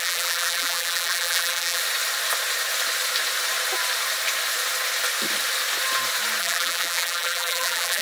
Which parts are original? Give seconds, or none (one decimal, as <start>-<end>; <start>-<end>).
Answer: 1.8-6.4